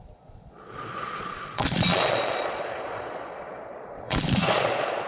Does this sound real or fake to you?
fake